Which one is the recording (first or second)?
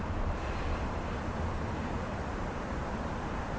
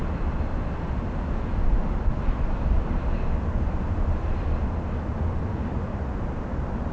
second